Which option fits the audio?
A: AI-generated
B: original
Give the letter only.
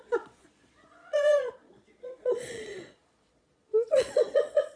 A